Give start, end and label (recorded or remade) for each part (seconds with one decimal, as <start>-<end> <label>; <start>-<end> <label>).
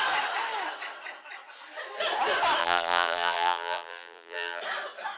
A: 0.0-2.6 recorded; 2.6-4.6 remade; 4.6-5.2 recorded